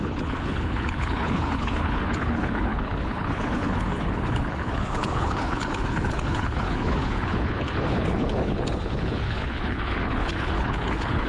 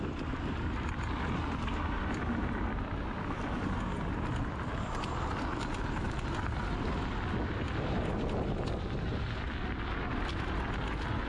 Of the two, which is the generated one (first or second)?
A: first